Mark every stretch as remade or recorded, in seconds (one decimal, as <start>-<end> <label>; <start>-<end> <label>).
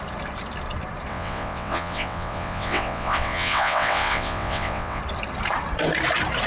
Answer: 0.0-1.1 recorded; 1.1-5.0 remade; 5.0-6.5 recorded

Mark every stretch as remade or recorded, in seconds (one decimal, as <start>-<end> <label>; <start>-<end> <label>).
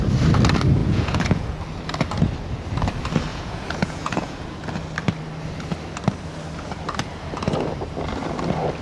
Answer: 0.0-0.8 recorded; 0.8-1.6 remade; 1.6-3.3 recorded; 3.3-4.6 remade; 4.6-8.8 recorded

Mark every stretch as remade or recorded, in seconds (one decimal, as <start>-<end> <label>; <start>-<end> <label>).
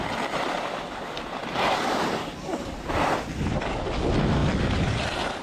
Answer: 0.0-5.4 recorded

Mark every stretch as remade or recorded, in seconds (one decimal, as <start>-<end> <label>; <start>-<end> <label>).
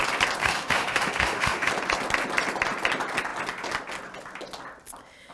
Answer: 0.0-0.4 recorded; 0.4-1.7 remade; 1.7-5.3 recorded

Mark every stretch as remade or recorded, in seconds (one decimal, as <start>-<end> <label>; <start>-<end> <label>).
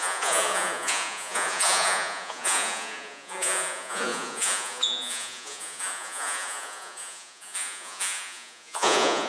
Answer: 0.0-9.3 remade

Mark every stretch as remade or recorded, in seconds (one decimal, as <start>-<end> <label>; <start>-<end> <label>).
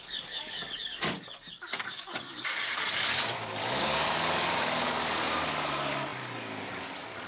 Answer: 0.0-7.3 remade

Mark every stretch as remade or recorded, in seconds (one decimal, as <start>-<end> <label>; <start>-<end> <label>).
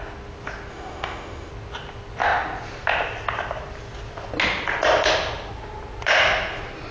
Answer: 0.0-0.7 recorded; 0.7-1.5 remade; 1.5-6.9 recorded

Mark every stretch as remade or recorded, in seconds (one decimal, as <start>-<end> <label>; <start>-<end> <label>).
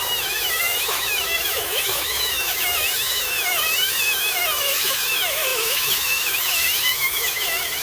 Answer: 0.0-7.8 remade